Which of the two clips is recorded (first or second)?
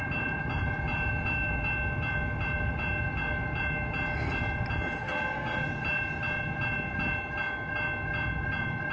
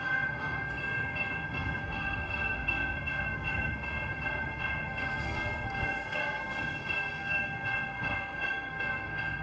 first